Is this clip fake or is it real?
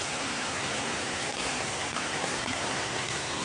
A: fake